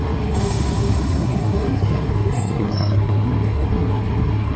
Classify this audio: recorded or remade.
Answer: remade